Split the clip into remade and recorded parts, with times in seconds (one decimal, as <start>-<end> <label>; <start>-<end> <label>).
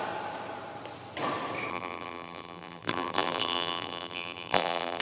0.0-1.7 recorded; 1.7-5.0 remade